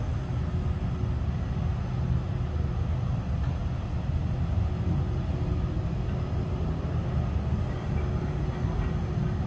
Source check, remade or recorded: recorded